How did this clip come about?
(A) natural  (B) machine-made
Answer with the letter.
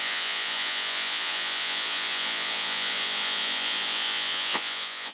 B